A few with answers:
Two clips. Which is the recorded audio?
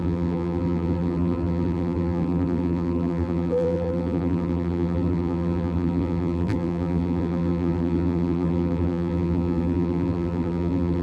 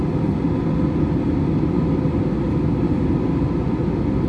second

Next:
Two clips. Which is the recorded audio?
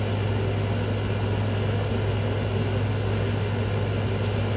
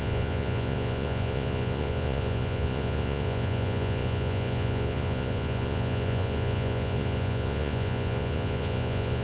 first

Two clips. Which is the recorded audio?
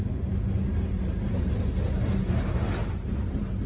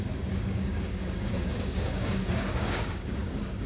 first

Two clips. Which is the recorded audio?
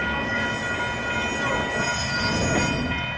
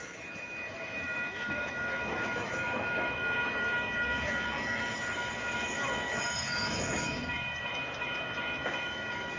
first